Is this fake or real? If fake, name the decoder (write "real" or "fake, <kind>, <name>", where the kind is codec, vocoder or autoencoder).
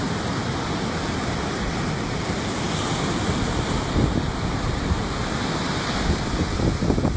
real